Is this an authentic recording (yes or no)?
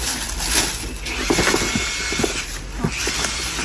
yes